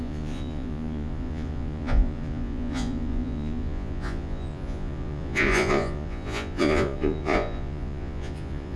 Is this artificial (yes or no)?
yes